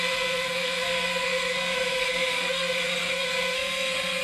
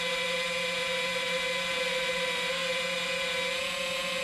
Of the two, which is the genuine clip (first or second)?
second